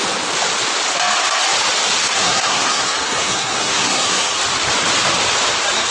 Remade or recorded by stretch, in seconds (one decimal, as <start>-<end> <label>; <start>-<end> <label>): 0.0-2.0 recorded; 2.0-4.4 remade; 4.4-5.9 recorded